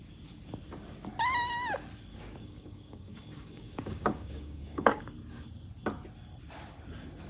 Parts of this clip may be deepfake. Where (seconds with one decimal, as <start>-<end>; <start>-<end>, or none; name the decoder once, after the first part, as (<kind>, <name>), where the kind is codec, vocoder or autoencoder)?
2.1-5.0 (codec, DAC)